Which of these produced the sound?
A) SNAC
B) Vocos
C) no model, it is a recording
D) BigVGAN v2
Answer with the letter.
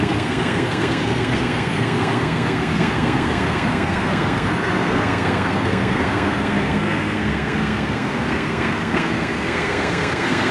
A